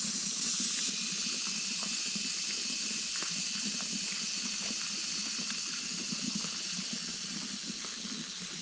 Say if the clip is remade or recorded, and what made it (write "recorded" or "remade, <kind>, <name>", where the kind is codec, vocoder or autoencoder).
recorded